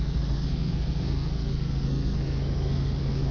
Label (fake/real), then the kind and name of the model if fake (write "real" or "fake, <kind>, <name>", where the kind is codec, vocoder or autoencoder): fake, codec, SNAC